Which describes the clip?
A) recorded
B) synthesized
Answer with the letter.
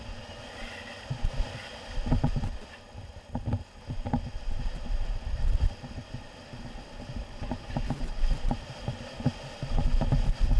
A